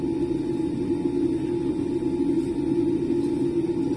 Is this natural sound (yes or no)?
yes